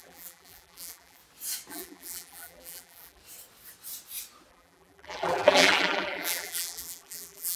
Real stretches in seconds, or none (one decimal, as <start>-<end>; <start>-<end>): 1.2-1.7; 3.2-4.5